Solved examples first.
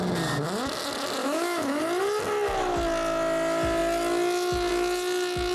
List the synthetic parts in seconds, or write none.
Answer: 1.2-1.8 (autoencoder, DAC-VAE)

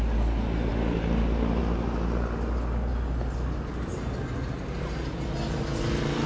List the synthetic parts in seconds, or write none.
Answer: none